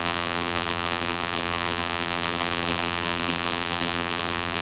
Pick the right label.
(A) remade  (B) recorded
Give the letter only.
A